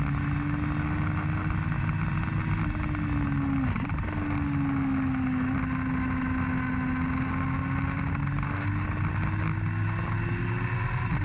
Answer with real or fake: real